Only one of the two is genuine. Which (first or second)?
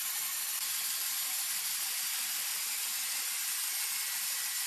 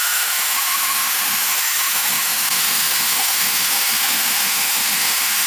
first